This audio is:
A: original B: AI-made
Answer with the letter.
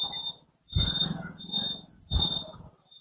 A